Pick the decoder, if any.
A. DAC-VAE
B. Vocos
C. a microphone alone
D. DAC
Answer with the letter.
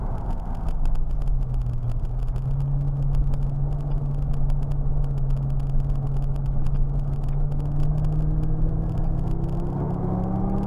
C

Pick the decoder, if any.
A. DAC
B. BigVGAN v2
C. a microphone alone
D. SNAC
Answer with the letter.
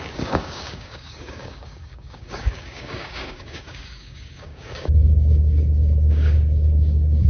A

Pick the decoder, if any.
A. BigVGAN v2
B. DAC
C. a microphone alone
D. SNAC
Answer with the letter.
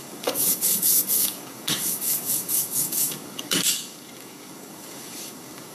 B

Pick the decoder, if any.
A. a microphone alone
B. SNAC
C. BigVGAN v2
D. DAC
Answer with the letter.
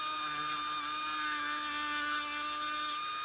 A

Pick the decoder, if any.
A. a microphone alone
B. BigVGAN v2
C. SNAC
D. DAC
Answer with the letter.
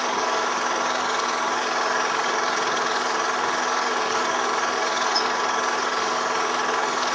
D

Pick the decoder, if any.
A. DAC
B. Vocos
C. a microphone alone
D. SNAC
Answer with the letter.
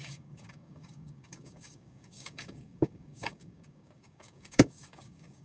A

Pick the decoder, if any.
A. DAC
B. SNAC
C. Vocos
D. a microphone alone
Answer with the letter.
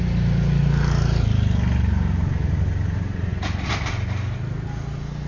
D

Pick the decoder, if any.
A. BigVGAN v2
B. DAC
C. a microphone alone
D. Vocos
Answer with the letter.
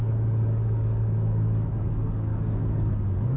B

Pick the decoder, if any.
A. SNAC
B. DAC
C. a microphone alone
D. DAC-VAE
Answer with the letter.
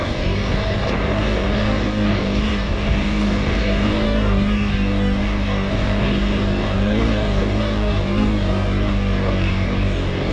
B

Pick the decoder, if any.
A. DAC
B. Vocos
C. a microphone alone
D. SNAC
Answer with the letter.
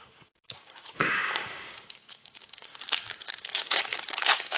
A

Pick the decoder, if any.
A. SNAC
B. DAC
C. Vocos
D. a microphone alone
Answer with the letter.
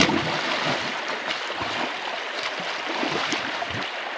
D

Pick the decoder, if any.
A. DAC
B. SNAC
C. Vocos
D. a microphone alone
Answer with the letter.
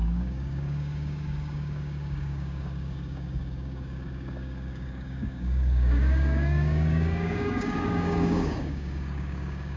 A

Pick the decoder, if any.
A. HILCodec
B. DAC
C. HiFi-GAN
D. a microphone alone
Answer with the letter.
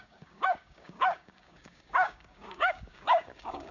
B